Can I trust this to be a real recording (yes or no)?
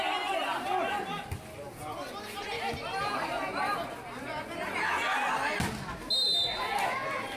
yes